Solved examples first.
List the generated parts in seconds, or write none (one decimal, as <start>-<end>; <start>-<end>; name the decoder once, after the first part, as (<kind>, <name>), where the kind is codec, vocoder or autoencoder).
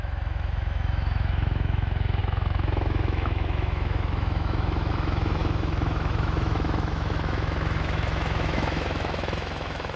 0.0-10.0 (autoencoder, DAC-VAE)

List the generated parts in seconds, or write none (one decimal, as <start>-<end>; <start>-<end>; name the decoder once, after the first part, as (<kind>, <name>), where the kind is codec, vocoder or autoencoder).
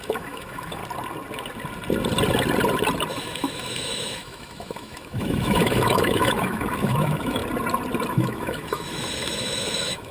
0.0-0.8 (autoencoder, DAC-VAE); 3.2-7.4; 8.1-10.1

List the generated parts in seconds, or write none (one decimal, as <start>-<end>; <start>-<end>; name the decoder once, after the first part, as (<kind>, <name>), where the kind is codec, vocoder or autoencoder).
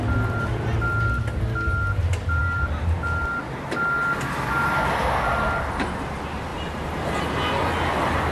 none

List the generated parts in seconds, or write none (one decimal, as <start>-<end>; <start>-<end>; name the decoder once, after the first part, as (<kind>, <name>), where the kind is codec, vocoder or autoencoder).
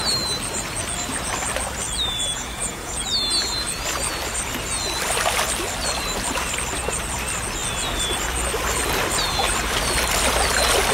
2.3-3.0 (vocoder, Vocos)